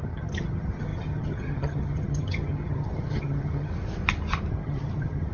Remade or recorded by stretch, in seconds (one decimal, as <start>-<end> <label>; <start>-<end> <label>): 0.0-3.7 remade; 3.7-4.5 recorded; 4.5-5.3 remade